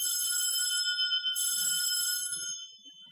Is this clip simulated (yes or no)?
yes